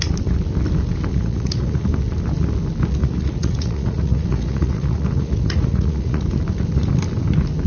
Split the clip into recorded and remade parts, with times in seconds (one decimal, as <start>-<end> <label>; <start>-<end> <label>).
0.0-1.1 recorded; 1.1-1.9 remade; 1.9-3.0 recorded; 3.0-6.2 remade; 6.2-7.7 recorded